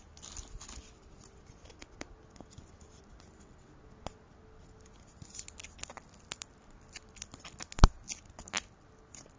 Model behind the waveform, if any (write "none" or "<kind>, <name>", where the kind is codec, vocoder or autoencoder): none